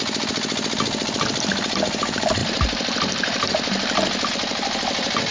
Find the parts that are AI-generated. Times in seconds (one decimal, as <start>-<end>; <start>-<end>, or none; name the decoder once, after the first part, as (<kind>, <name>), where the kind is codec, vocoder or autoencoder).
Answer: none